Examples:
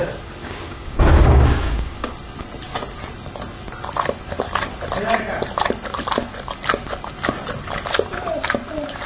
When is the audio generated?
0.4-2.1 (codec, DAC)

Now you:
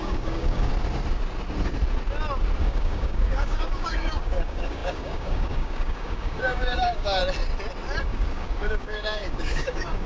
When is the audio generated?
0.0-0.7 (codec, DAC); 2.6-7.2; 8.0-10.1

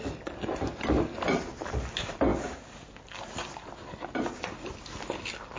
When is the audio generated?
none

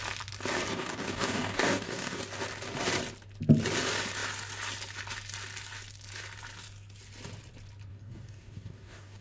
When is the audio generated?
0.7-2.2 (codec, DAC); 7.9-9.2

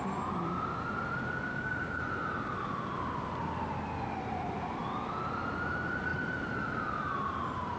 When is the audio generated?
1.5-2.0 (codec, DAC)

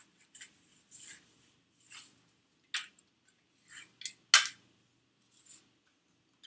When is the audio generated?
none

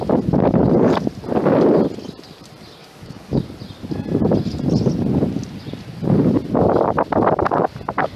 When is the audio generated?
2.8-3.4 (codec, DAC)